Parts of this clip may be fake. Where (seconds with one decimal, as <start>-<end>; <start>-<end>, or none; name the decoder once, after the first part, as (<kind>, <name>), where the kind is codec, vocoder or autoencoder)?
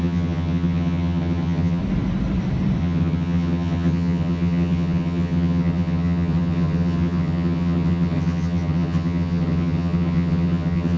0.0-1.8 (vocoder, HiFi-GAN); 2.8-11.0